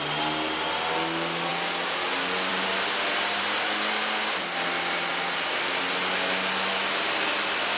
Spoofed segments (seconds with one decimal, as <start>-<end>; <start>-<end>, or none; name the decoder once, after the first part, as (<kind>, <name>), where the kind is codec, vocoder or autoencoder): none

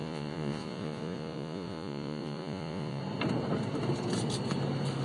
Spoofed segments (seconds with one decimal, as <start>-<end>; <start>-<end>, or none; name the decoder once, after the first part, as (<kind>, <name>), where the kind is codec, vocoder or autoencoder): 0.0-3.0 (vocoder, Vocos)

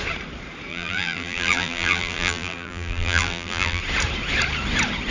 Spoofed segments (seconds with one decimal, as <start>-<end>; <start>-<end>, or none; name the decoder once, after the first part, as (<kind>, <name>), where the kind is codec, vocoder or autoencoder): 0.7-3.8 (vocoder, BigVGAN v2)

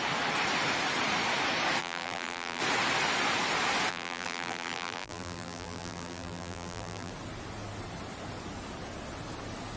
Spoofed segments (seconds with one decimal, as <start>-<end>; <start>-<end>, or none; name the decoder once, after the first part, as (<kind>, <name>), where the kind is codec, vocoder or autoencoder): 1.8-2.6 (vocoder, BigVGAN v2); 3.9-7.1

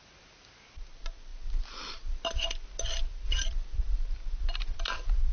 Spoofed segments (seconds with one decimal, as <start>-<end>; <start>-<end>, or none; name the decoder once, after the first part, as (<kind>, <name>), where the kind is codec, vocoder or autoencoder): none

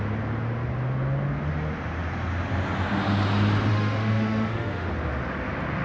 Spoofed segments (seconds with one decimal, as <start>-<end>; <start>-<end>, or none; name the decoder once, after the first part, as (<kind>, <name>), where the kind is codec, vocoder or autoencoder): 3.7-4.9 (autoencoder, DAC-VAE)

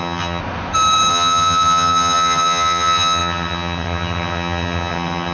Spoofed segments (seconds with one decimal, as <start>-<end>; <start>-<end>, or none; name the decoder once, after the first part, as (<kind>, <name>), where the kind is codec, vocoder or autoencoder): 0.0-0.4 (vocoder, HiFi-GAN); 1.1-5.3

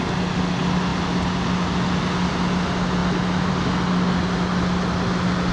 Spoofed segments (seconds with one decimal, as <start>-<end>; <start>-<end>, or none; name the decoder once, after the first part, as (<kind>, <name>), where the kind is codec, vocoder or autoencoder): none